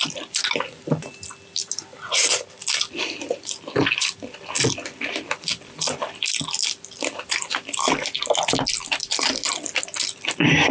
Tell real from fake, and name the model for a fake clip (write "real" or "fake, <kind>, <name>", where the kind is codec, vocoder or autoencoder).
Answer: real